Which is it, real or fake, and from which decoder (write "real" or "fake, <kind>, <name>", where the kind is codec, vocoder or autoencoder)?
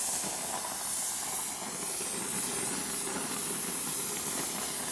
real